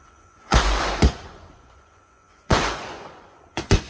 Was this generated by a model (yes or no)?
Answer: yes